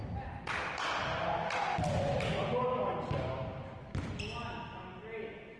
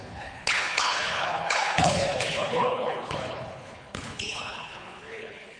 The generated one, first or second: second